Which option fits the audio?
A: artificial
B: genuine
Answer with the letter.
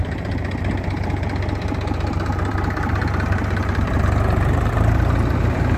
A